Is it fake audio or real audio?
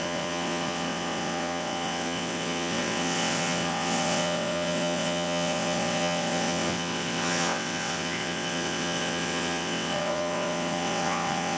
fake